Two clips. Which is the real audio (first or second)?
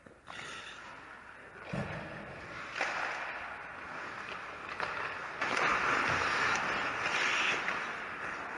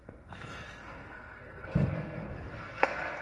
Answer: first